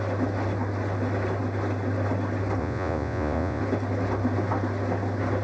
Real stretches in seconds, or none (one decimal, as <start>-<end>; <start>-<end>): 0.0-2.6; 3.6-5.4